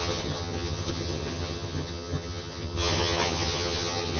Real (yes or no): no